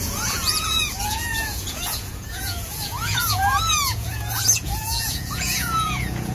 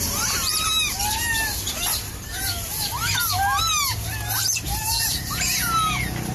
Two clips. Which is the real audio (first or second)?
second